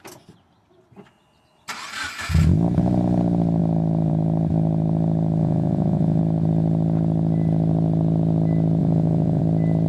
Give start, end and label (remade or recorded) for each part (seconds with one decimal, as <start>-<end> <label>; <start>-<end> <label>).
0.0-5.4 recorded; 5.4-6.2 remade; 6.2-8.8 recorded; 8.8-9.4 remade; 9.4-9.9 recorded